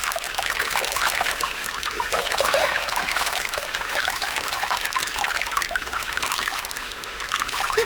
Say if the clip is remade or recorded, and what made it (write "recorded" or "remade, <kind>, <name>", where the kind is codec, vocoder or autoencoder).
remade, autoencoder, DAC-VAE